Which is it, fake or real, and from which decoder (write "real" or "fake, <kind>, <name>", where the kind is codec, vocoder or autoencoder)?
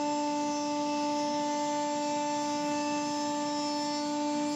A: real